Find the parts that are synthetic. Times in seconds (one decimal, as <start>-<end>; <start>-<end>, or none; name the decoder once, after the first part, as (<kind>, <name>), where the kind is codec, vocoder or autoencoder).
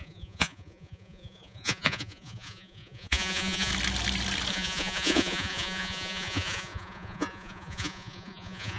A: 0.0-3.7 (vocoder, Vocos); 4.5-8.8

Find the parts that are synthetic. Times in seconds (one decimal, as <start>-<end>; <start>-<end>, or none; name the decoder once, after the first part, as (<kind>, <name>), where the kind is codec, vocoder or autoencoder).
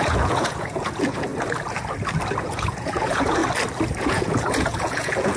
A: 0.0-1.3 (vocoder, Vocos); 2.4-3.4; 4.0-5.4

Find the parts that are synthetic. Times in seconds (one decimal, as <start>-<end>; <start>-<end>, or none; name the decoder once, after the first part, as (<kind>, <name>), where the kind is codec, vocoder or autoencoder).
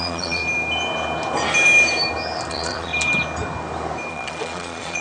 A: 0.0-0.4 (vocoder, Vocos); 2.5-2.9; 4.1-5.0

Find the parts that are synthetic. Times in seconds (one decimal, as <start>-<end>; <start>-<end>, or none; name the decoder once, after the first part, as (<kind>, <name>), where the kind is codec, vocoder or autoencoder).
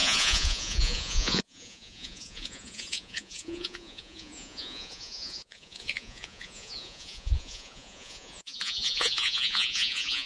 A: 0.0-10.3 (vocoder, Vocos)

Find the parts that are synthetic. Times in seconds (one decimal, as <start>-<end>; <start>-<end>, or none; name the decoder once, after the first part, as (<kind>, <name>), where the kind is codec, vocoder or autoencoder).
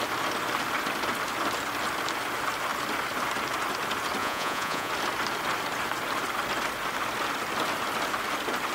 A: 4.2-4.9 (vocoder, Vocos)